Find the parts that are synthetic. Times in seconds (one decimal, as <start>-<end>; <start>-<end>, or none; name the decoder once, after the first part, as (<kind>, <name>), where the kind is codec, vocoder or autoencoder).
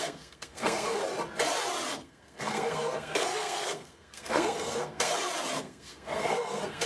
0.0-1.0 (codec, SNAC); 1.9-5.1; 5.6-6.9